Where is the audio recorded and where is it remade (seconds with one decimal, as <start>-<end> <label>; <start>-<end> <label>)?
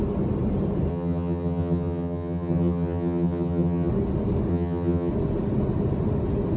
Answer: 0.0-0.9 recorded; 0.9-3.9 remade; 3.9-4.5 recorded; 4.5-5.1 remade; 5.1-6.6 recorded